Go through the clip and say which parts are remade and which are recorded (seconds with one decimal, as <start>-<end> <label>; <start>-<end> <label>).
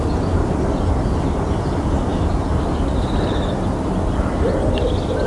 0.0-5.3 recorded